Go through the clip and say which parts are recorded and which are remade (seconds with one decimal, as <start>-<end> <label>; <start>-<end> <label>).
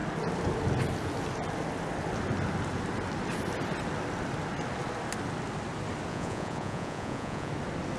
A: 0.0-6.1 recorded; 6.1-7.5 remade; 7.5-8.0 recorded